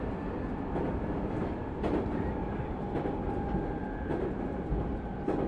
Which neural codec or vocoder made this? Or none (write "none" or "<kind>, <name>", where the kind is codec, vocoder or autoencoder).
none